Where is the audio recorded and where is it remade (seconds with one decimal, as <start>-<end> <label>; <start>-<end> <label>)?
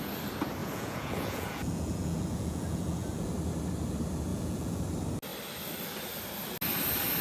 0.0-0.6 recorded; 0.6-3.3 remade; 3.3-4.3 recorded; 4.3-4.8 remade; 4.8-7.2 recorded